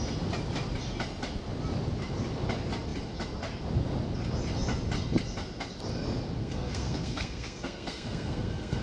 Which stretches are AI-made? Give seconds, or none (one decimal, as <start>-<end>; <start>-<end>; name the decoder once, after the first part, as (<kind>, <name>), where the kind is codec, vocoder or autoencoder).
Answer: 6.4-8.8 (codec, SNAC)